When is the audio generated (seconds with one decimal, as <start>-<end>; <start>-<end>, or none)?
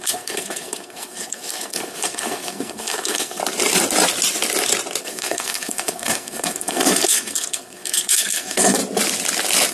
0.0-3.4; 5.0-8.8